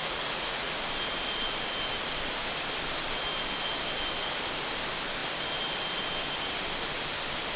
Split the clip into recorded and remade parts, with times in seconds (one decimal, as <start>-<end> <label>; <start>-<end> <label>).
0.0-0.7 remade; 0.7-7.6 recorded